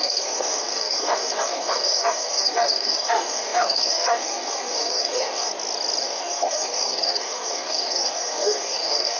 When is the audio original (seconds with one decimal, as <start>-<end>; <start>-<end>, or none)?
5.5-6.0